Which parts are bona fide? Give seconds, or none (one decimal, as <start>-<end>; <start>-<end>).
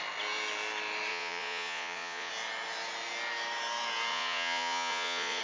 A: 0.0-1.1; 2.3-4.1